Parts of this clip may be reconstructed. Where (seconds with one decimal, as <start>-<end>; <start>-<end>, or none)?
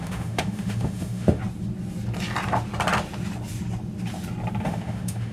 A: 0.0-1.4; 4.6-5.3